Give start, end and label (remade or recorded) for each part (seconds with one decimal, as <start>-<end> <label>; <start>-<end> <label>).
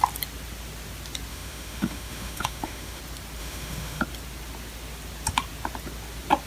0.0-1.3 recorded; 1.3-3.0 remade; 3.0-3.4 recorded; 3.4-4.0 remade; 4.0-6.5 recorded